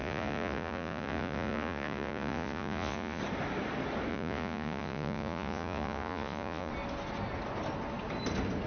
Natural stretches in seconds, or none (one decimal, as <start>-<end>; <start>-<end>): 3.2-4.1; 6.7-8.7

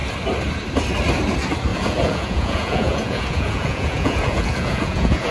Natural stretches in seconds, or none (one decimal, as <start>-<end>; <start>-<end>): 0.0-1.7